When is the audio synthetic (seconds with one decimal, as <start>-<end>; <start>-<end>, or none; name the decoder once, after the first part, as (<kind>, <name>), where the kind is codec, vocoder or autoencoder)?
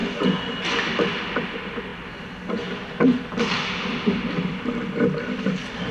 none